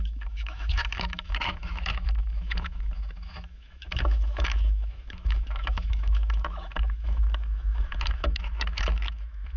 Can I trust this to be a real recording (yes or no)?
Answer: no